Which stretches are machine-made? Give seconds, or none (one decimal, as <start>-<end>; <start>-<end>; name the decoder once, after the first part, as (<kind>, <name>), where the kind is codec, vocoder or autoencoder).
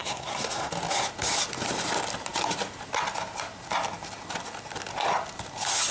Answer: 0.0-0.7 (codec, SNAC)